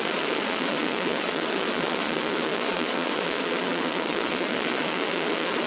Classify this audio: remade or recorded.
remade